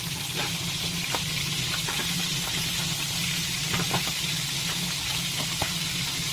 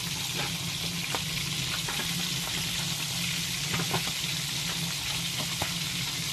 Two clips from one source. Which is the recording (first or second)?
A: second